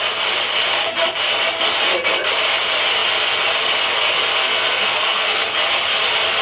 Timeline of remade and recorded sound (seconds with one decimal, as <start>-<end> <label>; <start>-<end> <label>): 0.0-4.4 recorded; 4.4-5.4 remade; 5.4-6.4 recorded